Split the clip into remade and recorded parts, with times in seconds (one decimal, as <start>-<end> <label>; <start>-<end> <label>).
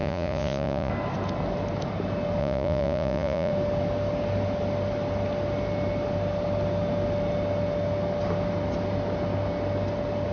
0.0-0.9 remade; 0.9-2.4 recorded; 2.4-3.5 remade; 3.5-10.3 recorded